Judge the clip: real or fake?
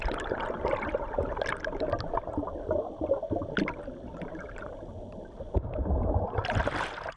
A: real